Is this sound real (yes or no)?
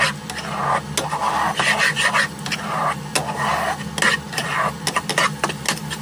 yes